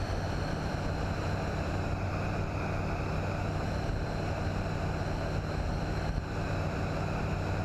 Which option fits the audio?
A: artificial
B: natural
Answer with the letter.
B